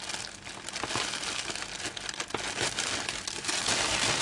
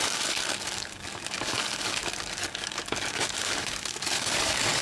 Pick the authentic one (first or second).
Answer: first